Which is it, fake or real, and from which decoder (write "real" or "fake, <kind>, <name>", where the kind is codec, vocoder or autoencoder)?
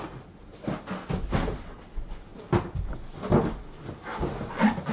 real